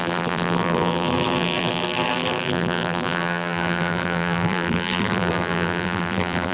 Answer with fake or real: fake